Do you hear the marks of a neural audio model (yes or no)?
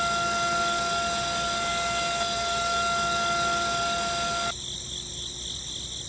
no